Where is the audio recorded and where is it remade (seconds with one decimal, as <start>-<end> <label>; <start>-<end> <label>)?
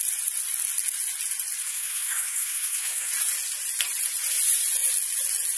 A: 0.0-1.6 recorded; 1.6-3.1 remade; 3.1-5.6 recorded